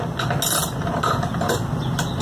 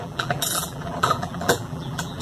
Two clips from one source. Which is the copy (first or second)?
second